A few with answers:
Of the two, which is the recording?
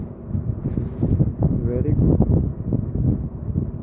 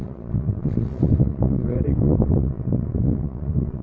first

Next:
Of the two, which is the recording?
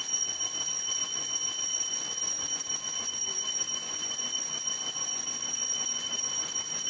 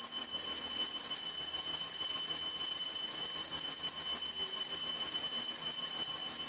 second